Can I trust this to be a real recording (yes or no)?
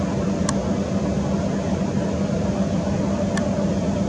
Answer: yes